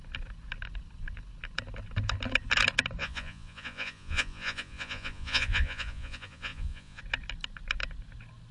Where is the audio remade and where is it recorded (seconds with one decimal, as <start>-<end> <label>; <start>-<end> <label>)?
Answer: 0.0-3.0 recorded; 3.0-7.0 remade; 7.0-8.5 recorded